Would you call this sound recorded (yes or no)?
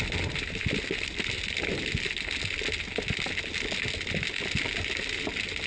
yes